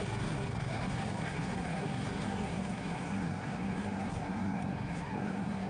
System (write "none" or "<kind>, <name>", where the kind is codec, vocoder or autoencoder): codec, SNAC